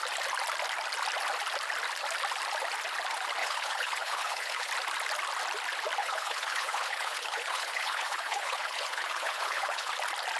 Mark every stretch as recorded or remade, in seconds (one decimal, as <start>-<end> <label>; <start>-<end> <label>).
0.0-3.4 recorded; 3.4-4.7 remade; 4.7-6.0 recorded; 6.0-9.9 remade; 9.9-10.4 recorded